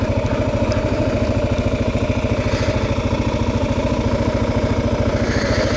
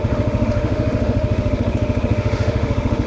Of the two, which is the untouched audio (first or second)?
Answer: first